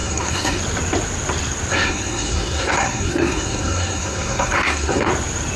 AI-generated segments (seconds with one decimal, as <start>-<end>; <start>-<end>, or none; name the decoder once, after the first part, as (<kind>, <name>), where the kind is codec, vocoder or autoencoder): 0.0-0.6 (codec, SNAC); 1.7-5.1